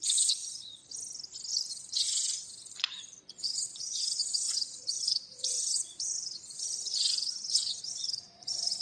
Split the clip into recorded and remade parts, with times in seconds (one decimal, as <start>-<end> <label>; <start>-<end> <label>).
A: 0.0-0.8 remade; 0.8-1.7 recorded; 1.7-8.8 remade